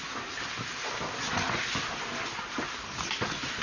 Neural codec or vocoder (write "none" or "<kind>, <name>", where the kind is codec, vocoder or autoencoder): none